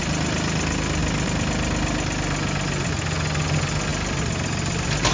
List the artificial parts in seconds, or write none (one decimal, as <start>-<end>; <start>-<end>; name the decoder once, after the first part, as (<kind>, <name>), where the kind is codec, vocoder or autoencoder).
none